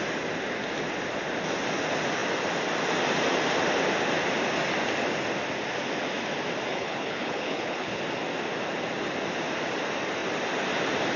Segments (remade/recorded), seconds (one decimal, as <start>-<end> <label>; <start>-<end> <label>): 0.0-6.7 recorded; 6.7-8.0 remade; 8.0-11.2 recorded